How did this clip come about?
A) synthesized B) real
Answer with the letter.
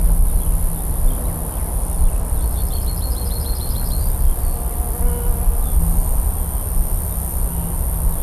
B